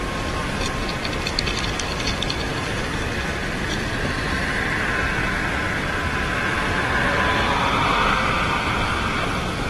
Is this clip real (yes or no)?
yes